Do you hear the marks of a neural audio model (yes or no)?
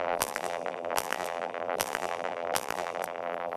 yes